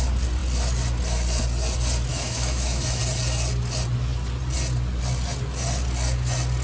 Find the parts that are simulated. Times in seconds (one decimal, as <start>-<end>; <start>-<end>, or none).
2.1-3.0